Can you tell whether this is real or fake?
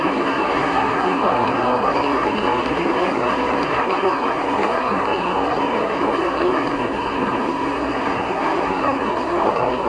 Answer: fake